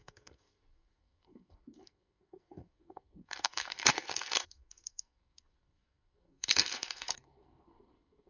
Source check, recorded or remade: remade